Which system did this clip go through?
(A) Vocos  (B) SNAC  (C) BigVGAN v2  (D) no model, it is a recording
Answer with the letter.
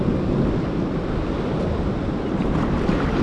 D